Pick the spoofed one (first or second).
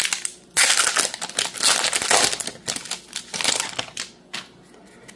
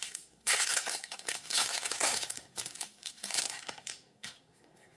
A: second